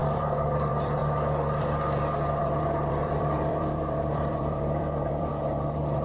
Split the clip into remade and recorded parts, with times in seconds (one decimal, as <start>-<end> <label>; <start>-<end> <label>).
0.0-1.0 remade; 1.0-2.4 recorded; 2.4-5.3 remade; 5.3-6.0 recorded